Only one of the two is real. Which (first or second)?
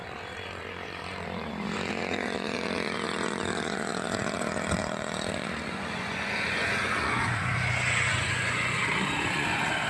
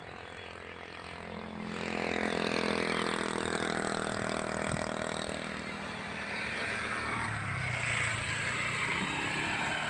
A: second